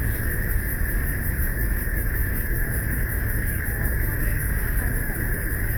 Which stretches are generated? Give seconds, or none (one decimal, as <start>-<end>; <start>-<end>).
0.0-0.7; 1.3-5.8